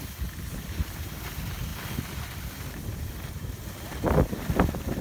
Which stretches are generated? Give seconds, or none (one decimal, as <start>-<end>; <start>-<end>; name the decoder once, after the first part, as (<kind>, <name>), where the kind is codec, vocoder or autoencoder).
none